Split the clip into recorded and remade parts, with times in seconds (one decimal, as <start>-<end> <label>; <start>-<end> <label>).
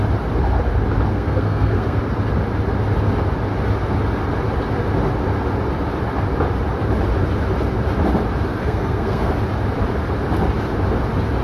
0.0-1.1 recorded; 1.1-2.0 remade; 2.0-8.5 recorded; 8.5-9.3 remade; 9.3-11.4 recorded